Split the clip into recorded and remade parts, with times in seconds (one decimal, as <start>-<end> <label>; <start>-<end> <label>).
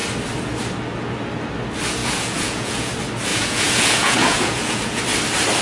0.0-2.0 recorded; 2.0-2.9 remade; 2.9-3.3 recorded; 3.3-5.0 remade; 5.0-5.6 recorded